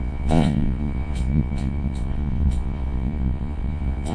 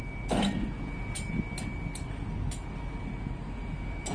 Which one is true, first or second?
second